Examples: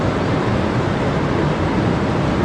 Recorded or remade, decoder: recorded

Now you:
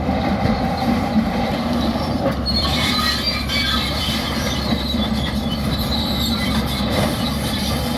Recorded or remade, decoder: remade, vocoder, BigVGAN v2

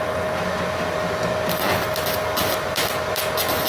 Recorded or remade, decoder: recorded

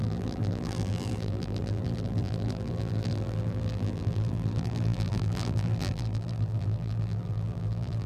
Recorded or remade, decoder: remade, vocoder, BigVGAN v2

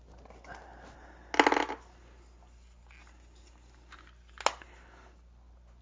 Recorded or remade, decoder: recorded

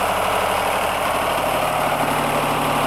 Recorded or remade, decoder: remade, vocoder, BigVGAN v2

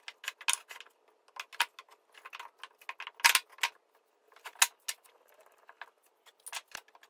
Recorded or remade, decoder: recorded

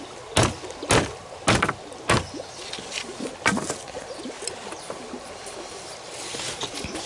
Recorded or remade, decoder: recorded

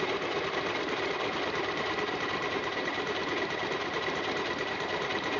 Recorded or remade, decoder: remade, vocoder, BigVGAN v2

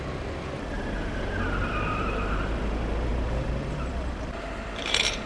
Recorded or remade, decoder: remade, vocoder, BigVGAN v2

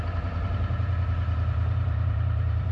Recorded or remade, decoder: remade, vocoder, BigVGAN v2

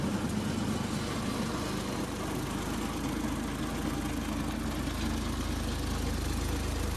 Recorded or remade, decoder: recorded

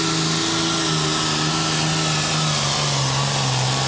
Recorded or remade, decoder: recorded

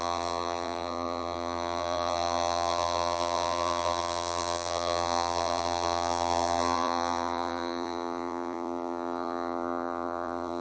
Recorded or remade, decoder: remade, vocoder, BigVGAN v2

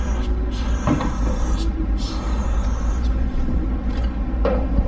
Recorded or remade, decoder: remade, vocoder, BigVGAN v2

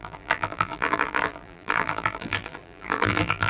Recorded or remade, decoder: remade, vocoder, BigVGAN v2